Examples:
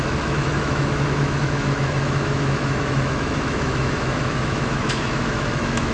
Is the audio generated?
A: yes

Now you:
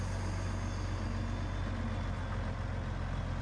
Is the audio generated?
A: no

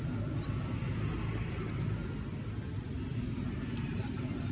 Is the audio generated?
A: no